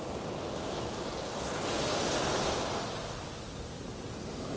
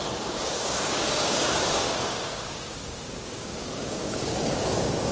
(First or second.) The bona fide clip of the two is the first